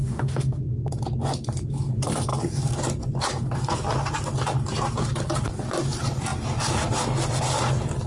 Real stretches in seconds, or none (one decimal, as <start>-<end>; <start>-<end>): 0.6-8.1